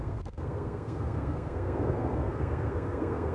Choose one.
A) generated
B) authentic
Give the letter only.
A